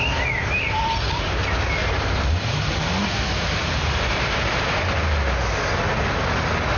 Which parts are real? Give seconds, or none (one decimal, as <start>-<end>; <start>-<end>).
0.0-1.8; 5.2-6.8